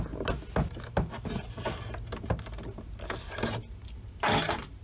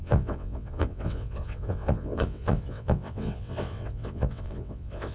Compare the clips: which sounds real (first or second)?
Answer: first